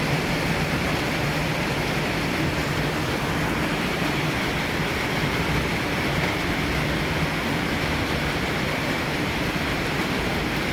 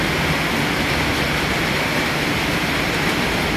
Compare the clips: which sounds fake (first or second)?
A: first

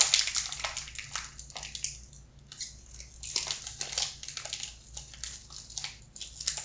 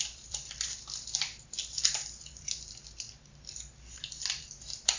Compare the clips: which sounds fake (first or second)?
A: second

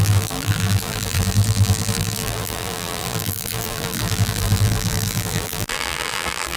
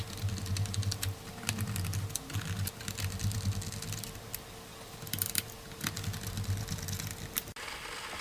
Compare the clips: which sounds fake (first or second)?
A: first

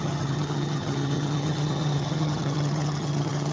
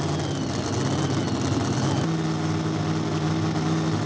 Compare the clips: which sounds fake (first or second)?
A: first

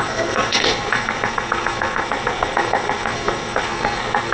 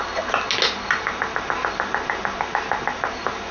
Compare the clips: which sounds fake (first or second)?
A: first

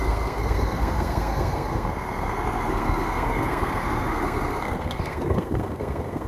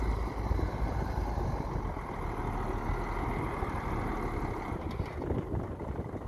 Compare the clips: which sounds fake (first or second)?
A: first